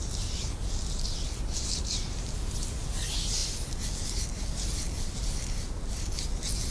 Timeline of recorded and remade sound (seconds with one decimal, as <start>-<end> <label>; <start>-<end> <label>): 0.0-6.7 recorded